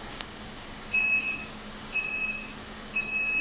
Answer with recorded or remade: remade